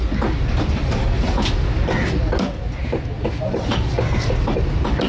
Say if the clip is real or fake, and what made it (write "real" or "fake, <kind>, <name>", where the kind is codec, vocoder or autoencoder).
real